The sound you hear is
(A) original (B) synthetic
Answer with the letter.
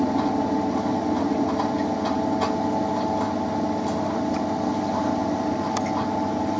A